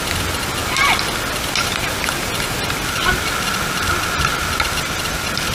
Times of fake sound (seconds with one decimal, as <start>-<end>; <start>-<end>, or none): none